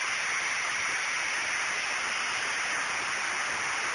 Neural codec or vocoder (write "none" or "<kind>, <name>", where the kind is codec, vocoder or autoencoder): none